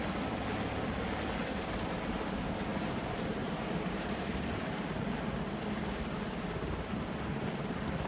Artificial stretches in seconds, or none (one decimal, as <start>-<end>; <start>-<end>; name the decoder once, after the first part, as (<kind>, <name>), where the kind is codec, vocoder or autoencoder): 2.7-5.1 (vocoder, BigVGAN v2)